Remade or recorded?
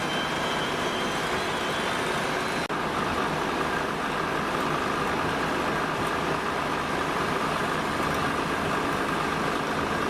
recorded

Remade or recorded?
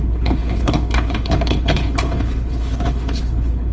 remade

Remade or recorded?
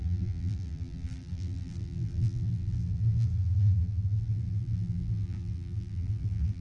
remade